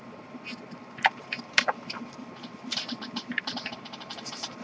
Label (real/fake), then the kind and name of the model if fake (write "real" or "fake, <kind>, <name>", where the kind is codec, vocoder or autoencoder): fake, vocoder, BigVGAN v2